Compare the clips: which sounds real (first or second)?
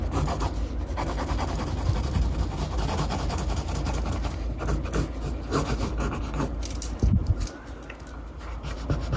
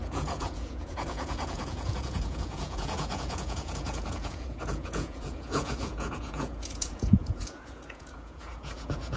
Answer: first